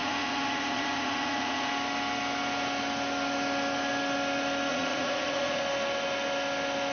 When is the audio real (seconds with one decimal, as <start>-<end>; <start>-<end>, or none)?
1.7-4.7; 5.6-6.9